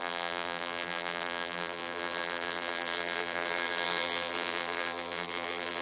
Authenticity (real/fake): fake